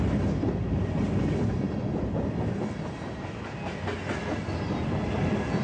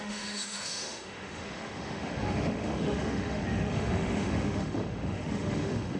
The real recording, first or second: first